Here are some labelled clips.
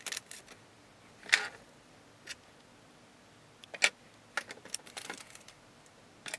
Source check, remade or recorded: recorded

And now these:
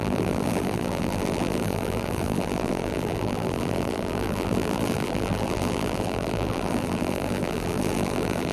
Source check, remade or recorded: remade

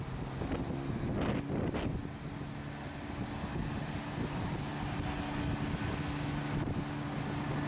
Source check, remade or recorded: recorded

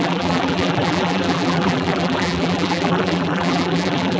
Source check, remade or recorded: remade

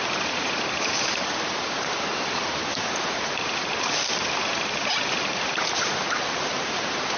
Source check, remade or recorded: remade